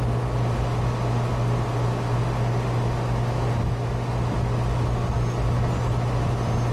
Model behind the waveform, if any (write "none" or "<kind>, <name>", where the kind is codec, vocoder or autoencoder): none